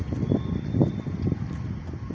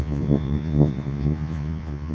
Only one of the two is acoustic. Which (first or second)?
first